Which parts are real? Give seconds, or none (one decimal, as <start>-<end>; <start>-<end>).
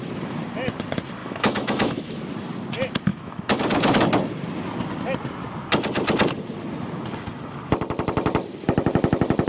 0.0-1.2; 2.2-3.1; 3.6-9.5